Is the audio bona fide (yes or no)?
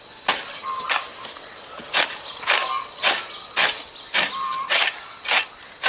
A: yes